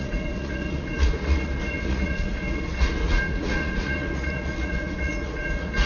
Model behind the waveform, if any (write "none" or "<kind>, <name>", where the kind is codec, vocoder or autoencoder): vocoder, Vocos